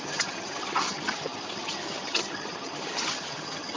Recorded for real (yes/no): no